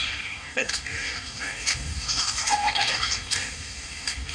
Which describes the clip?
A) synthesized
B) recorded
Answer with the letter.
A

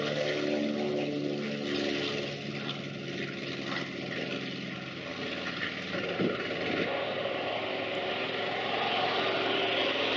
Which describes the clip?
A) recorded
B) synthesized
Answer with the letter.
A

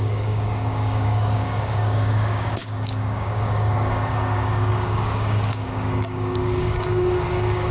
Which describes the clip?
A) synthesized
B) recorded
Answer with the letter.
A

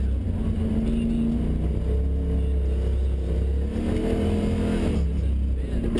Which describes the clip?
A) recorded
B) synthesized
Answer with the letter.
A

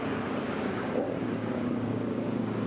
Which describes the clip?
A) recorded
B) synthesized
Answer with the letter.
B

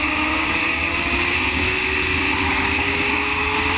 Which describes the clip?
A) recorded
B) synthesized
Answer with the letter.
B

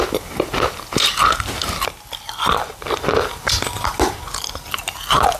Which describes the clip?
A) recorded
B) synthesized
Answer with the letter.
A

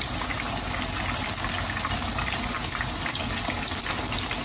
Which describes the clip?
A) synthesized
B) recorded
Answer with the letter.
B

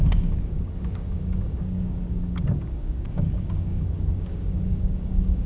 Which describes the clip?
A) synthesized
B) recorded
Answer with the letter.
A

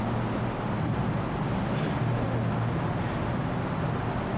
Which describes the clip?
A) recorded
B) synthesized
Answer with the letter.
A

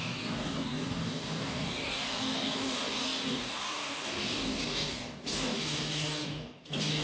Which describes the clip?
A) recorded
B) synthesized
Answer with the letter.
B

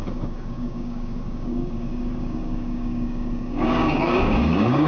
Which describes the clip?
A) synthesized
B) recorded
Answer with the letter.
A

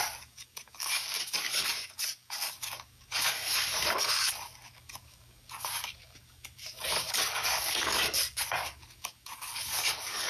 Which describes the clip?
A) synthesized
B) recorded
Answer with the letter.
A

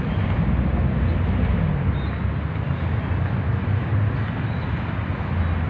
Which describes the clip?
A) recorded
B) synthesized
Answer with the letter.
A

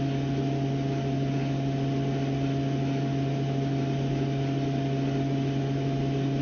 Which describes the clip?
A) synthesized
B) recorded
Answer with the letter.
B